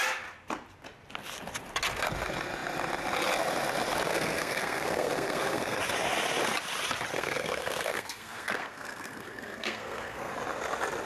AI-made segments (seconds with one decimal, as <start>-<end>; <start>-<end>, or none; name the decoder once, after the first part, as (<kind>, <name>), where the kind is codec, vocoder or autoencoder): 4.1-5.8 (codec, SNAC); 7.1-10.3